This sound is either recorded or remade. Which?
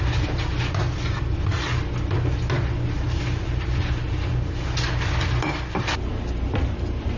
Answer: recorded